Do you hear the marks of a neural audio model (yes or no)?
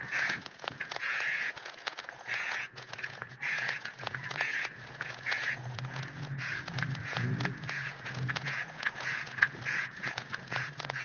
yes